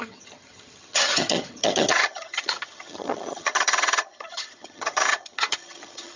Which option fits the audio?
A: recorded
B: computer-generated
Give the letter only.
B